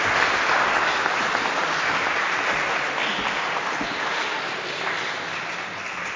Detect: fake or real real